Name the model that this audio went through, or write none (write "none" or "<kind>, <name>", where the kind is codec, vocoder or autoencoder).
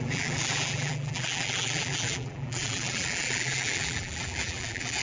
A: vocoder, BigVGAN v2